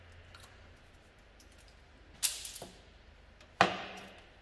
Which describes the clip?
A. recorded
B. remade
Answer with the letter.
A